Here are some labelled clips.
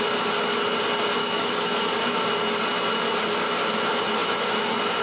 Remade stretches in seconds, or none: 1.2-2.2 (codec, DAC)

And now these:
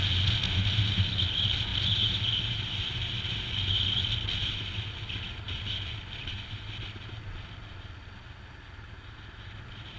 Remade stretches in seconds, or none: none

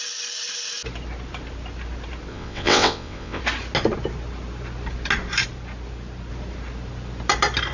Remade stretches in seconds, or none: 2.3-3.4 (vocoder, WaveNeXt)

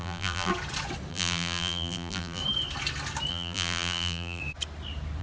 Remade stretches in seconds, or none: 0.0-0.5 (vocoder, BigVGAN v2); 1.1-2.4; 3.3-4.4